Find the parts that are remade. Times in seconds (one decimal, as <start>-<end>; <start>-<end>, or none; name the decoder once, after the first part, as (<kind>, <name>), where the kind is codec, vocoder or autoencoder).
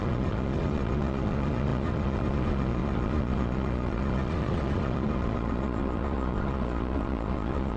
0.0-7.8 (vocoder, Vocos)